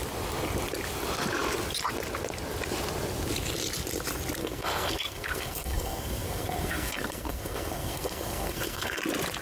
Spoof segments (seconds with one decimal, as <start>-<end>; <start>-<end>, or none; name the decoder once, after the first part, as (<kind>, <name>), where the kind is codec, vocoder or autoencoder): 4.4-9.0 (codec, SNAC)